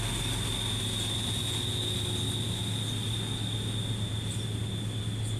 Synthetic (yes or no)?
no